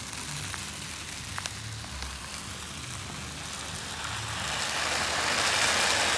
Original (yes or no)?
yes